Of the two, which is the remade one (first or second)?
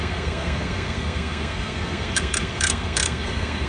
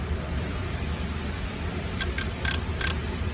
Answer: first